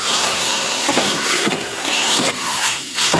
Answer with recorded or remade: remade